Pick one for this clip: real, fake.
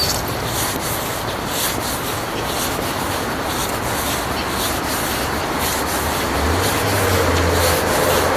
real